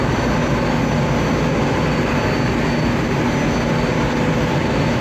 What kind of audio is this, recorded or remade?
recorded